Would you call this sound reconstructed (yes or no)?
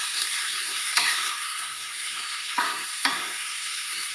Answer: yes